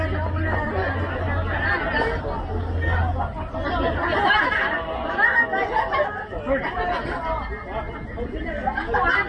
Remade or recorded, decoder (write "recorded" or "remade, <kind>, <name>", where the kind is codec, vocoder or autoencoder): recorded